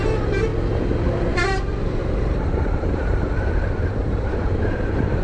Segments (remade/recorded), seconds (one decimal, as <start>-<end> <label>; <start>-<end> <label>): 0.0-2.0 recorded; 2.0-5.2 remade